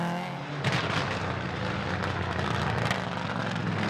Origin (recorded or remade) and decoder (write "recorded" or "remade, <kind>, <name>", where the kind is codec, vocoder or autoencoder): recorded